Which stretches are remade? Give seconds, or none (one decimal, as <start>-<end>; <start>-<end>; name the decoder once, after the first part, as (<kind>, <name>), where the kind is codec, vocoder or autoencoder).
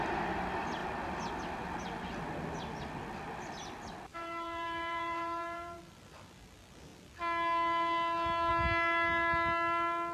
4.1-5.8 (vocoder, BigVGAN v2)